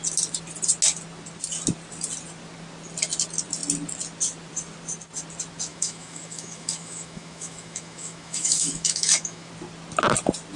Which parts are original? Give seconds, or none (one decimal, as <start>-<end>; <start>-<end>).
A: 0.0-5.7; 9.5-10.6